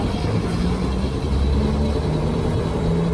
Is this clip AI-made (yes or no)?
no